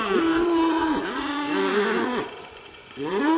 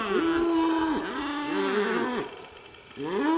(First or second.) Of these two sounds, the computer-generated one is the first